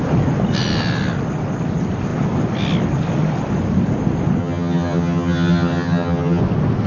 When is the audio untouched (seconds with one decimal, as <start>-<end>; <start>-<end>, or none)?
0.0-4.4; 6.4-6.9